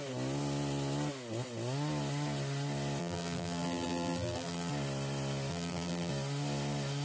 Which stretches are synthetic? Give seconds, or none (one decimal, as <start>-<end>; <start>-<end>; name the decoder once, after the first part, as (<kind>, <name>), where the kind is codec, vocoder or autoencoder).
3.0-4.7 (vocoder, BigVGAN v2); 5.5-6.1